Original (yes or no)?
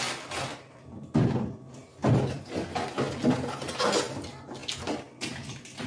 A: yes